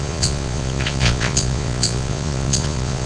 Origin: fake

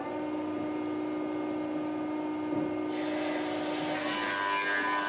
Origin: real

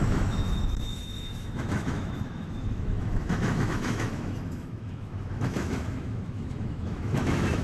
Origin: fake